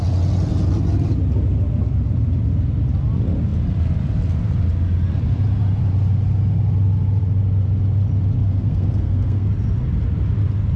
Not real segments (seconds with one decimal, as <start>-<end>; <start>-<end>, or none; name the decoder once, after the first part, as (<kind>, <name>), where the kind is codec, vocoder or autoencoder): 8.4-9.5 (codec, SNAC)